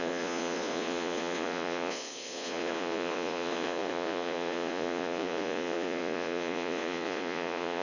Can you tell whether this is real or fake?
fake